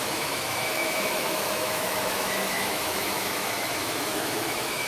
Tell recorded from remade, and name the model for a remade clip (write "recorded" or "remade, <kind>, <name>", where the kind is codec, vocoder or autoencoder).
remade, autoencoder, DAC-VAE